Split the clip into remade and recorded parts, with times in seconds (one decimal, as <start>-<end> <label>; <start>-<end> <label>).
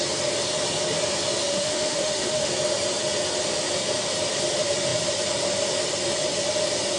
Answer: 0.0-1.5 recorded; 1.5-2.5 remade; 2.5-7.0 recorded